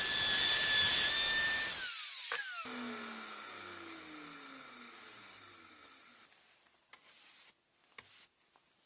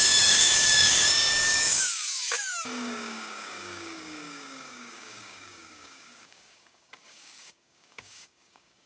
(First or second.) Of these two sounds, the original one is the first